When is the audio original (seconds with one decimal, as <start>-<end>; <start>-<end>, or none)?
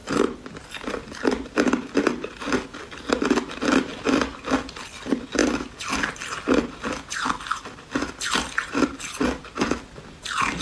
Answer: 0.0-10.6